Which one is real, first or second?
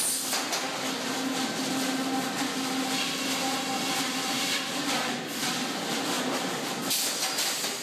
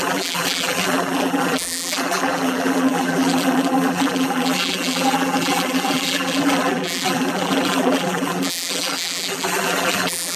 first